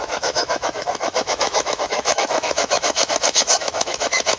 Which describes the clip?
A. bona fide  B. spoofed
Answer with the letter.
B